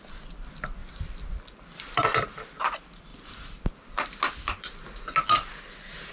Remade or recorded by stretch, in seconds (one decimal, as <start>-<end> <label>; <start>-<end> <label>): 0.0-0.8 recorded; 0.8-2.5 remade; 2.5-3.1 recorded; 3.1-4.2 remade; 4.2-6.1 recorded